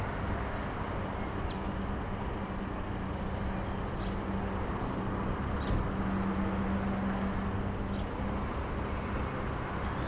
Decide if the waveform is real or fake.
real